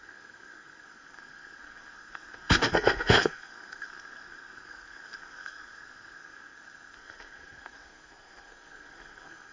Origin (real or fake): fake